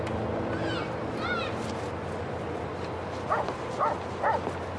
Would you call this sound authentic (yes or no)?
yes